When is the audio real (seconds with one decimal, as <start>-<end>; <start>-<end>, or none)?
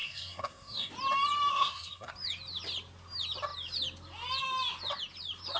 0.9-1.5; 2.1-5.6